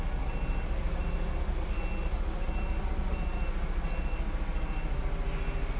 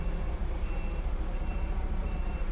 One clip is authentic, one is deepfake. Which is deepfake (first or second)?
second